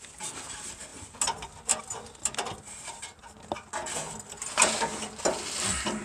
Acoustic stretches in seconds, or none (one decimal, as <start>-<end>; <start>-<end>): 0.9-1.8; 3.2-4.6